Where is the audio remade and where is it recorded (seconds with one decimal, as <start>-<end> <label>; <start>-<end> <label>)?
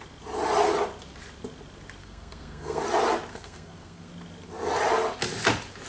0.0-2.0 recorded; 2.0-2.8 remade; 2.8-3.3 recorded; 3.3-4.1 remade; 4.1-5.9 recorded